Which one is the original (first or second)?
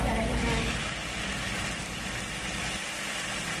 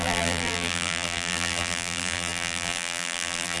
first